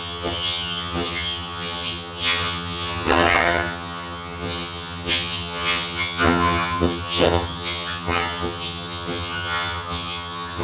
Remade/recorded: remade